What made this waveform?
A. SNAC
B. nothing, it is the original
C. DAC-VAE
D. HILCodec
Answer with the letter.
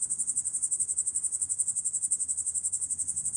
D